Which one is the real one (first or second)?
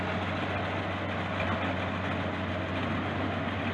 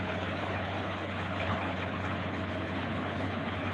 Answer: first